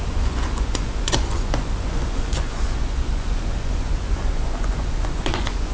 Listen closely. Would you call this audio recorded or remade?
remade